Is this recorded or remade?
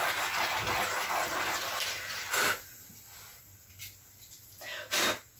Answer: recorded